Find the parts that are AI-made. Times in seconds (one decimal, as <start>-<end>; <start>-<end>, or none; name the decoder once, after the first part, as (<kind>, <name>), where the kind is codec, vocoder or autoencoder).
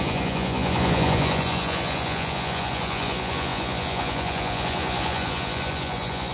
0.0-6.3 (vocoder, Vocos)